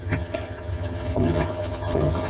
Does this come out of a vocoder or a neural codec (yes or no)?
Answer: yes